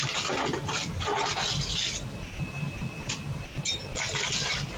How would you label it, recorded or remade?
recorded